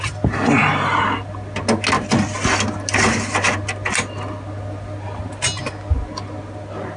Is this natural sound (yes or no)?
yes